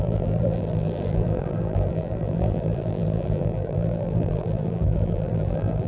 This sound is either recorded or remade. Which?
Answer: remade